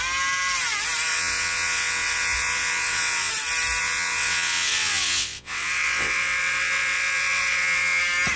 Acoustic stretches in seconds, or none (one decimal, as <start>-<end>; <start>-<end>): 0.0-1.1; 3.3-3.8; 8.0-8.4